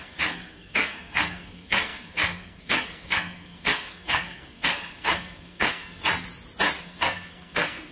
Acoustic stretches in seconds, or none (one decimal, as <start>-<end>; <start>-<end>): 6.0-6.8